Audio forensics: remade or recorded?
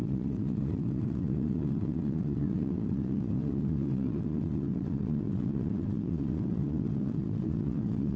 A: remade